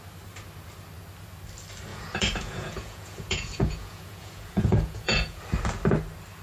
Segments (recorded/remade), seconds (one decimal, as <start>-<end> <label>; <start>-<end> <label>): 0.0-1.9 recorded; 1.9-5.4 remade; 5.4-6.4 recorded